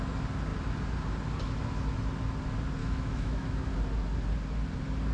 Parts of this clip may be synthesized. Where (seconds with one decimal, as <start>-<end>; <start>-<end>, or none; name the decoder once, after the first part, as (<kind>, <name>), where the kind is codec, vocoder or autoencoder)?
2.8-3.7 (autoencoder, DAC-VAE)